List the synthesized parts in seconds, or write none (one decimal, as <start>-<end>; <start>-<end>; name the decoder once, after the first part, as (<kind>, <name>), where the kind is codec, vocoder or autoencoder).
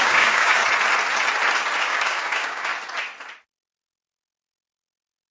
0.0-0.6 (codec, DAC); 1.8-2.7